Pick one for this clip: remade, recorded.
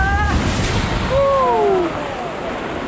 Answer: recorded